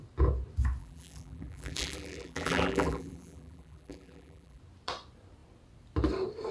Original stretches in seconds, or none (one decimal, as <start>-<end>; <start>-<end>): 0.0-0.8; 4.6-6.5